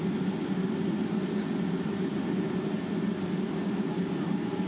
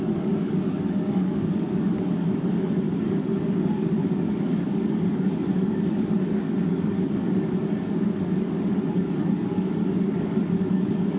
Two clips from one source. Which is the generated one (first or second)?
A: second